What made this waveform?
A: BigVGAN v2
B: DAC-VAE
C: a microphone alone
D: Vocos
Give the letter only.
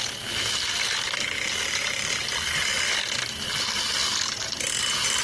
C